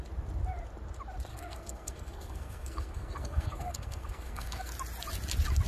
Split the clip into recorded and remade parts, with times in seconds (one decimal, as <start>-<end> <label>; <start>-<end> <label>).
0.0-1.3 recorded; 1.3-4.7 remade; 4.7-5.7 recorded